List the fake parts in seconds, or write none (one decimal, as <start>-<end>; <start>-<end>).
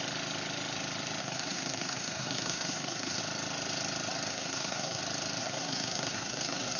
1.2-3.2; 4.3-5.0; 5.4-6.8